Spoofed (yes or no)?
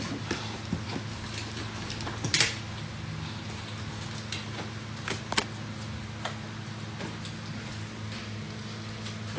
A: no